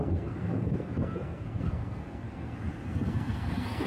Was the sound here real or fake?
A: fake